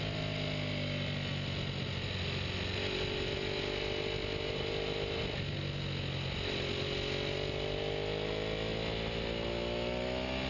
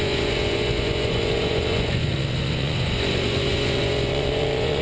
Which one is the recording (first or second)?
first